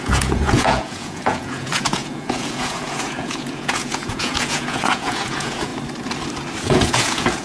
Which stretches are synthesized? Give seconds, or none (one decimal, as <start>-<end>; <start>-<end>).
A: 0.0-5.7; 6.6-7.4